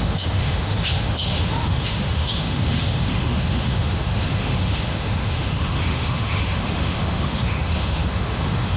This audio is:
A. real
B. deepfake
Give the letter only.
B